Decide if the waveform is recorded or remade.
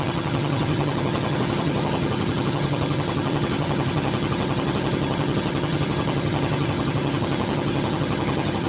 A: remade